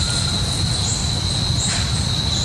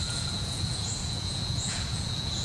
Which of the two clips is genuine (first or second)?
first